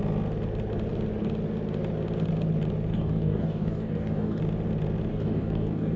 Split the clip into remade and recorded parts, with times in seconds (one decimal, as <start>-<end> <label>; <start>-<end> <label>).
0.0-2.9 recorded; 2.9-4.4 remade; 4.4-5.1 recorded; 5.1-6.0 remade